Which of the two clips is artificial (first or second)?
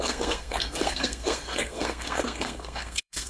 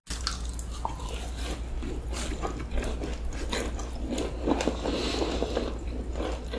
first